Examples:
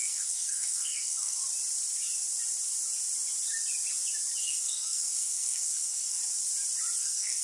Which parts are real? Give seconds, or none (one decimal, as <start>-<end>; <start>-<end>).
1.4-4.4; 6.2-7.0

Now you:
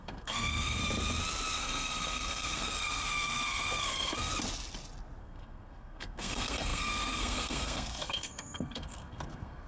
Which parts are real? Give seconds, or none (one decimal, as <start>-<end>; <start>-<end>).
0.8-1.6; 4.3-5.2

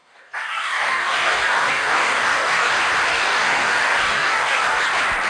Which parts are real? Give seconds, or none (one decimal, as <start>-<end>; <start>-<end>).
2.7-3.1; 4.8-5.3

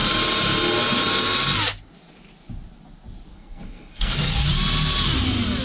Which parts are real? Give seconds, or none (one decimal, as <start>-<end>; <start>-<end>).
0.0-3.3; 4.4-5.6

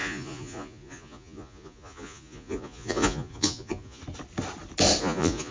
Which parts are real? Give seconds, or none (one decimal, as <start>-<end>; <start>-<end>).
4.0-5.0